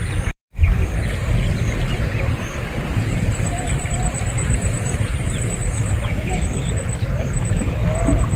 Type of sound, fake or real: fake